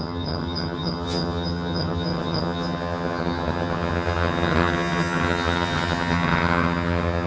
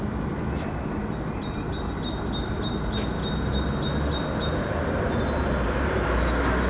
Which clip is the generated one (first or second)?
first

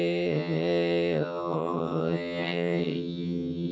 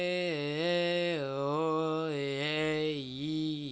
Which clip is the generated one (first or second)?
first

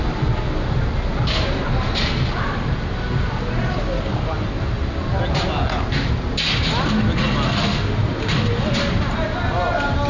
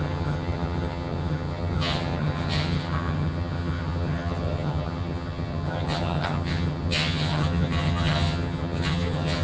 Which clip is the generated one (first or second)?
second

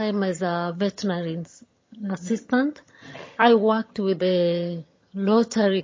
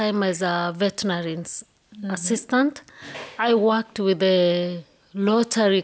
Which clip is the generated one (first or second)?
first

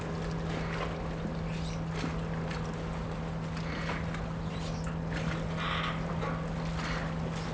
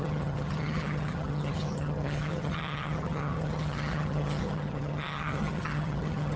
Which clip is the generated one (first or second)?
second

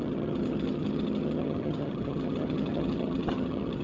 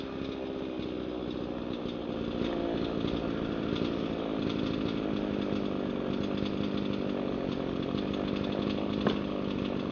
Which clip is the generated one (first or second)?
first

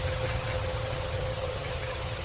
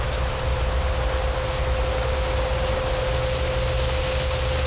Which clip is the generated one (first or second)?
first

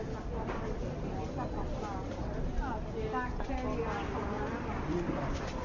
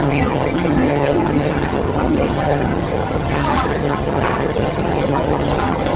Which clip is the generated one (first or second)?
second